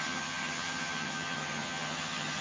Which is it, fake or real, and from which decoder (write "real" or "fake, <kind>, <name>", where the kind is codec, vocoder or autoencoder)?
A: fake, vocoder, HiFi-GAN